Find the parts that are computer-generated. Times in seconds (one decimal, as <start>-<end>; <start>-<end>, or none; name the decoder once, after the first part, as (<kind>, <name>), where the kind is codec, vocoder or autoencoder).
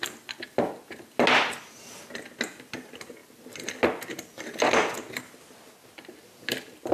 none